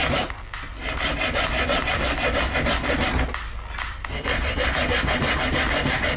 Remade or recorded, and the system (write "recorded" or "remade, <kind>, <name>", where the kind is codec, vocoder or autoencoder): recorded